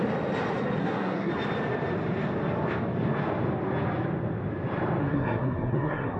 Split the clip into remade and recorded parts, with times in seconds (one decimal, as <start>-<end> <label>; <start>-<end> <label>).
0.0-0.8 recorded; 0.8-1.3 remade; 1.3-5.0 recorded; 5.0-6.2 remade